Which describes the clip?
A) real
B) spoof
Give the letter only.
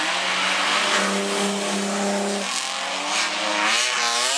A